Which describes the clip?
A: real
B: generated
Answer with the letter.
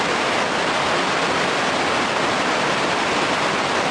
A